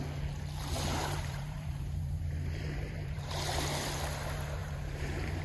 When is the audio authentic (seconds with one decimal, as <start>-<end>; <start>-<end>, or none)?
0.0-1.0; 3.3-4.6